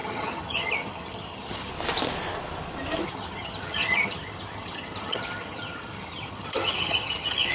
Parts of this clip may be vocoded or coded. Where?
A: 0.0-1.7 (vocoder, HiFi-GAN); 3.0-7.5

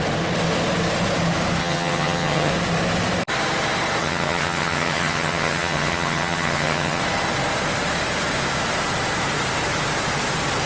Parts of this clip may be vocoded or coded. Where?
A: 1.6-2.5 (vocoder, HiFi-GAN); 4.0-7.0